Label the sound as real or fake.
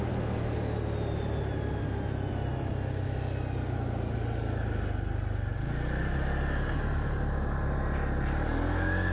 real